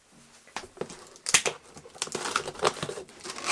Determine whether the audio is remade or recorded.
recorded